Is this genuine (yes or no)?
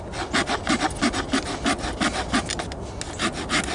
yes